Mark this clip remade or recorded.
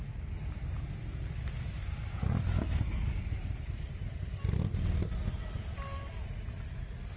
recorded